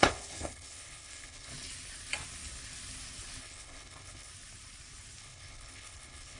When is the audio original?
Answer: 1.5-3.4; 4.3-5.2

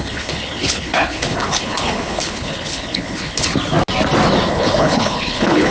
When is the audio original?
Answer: 3.5-4.5

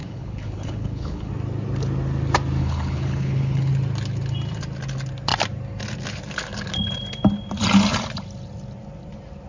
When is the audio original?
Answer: 1.3-2.6; 3.7-9.5

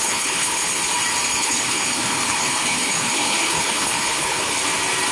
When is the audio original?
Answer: 0.8-1.4; 4.5-5.1

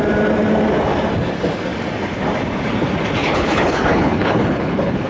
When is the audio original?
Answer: 0.0-3.2

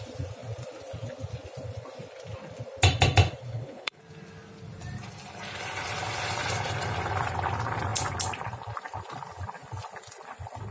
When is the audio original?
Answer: 0.0-3.4; 4.0-10.7

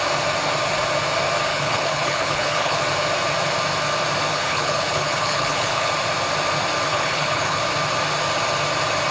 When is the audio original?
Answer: 0.0-1.5; 2.8-4.3; 5.9-6.9; 7.6-9.1

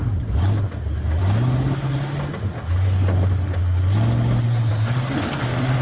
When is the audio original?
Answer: 0.0-5.8